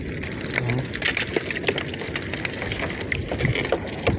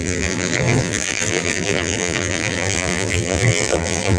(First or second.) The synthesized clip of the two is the second